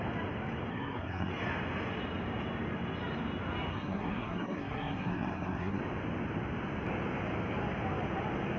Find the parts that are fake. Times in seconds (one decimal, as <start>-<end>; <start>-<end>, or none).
0.7-1.3; 3.7-5.8